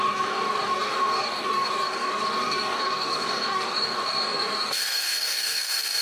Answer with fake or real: fake